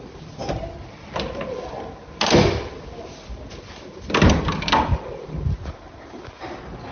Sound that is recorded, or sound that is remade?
recorded